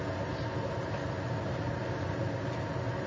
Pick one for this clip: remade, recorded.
recorded